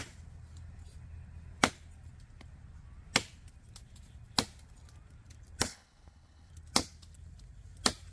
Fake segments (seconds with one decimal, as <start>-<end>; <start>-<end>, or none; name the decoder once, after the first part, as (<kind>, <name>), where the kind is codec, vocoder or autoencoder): 5.7-6.5 (codec, HILCodec)